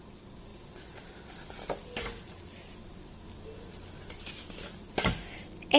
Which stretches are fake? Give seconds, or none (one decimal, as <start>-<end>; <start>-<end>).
none

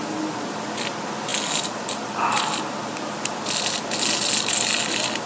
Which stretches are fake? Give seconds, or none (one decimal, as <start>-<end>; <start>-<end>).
none

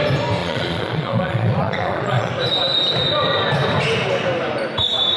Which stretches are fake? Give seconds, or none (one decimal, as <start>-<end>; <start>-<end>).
0.4-2.3

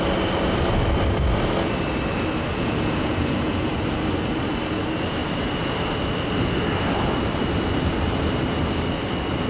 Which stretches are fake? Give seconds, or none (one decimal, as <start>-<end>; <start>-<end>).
2.5-3.7

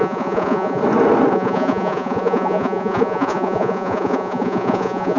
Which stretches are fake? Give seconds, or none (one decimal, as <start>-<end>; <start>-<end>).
0.0-0.8; 1.3-5.2